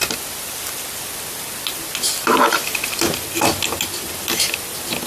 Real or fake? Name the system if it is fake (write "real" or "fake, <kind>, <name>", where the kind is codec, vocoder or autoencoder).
real